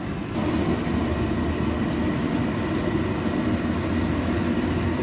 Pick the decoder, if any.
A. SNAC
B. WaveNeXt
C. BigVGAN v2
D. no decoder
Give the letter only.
D